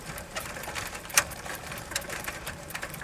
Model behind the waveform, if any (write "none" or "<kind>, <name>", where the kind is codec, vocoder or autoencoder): vocoder, BigVGAN v2